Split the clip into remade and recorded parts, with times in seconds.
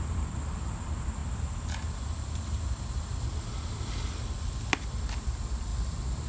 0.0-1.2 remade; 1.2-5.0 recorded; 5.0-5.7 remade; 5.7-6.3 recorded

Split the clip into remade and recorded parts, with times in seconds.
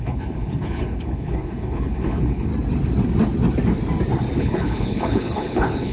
0.0-2.5 remade; 2.5-4.4 recorded; 4.4-5.9 remade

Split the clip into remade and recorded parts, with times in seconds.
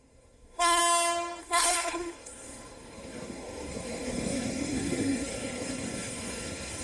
0.0-0.8 remade; 0.8-1.4 recorded; 1.4-6.8 remade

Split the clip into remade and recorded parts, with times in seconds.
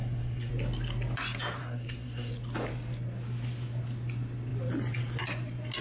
0.0-0.5 remade; 0.5-1.6 recorded; 1.6-2.3 remade; 2.3-5.8 recorded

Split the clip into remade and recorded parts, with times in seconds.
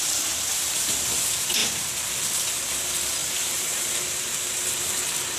0.0-0.5 remade; 0.5-3.2 recorded; 3.2-5.0 remade; 5.0-5.4 recorded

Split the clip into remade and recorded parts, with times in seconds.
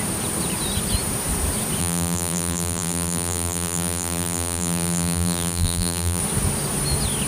0.0-1.8 recorded; 1.8-6.2 remade; 6.2-7.3 recorded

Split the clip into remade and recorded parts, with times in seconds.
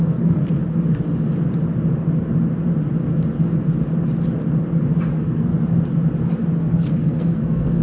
0.0-0.4 remade; 0.4-5.1 recorded; 5.1-5.5 remade; 5.5-6.6 recorded; 6.6-7.8 remade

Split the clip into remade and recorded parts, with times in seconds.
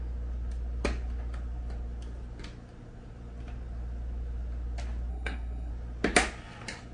0.0-5.1 recorded; 5.1-5.7 remade; 5.7-6.9 recorded